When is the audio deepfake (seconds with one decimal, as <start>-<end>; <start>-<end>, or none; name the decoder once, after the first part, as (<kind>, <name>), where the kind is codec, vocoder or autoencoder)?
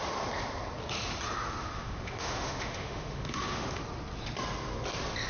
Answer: 1.6-3.8 (autoencoder, DAC-VAE)